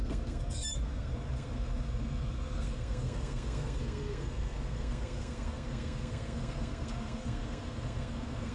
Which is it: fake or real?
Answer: fake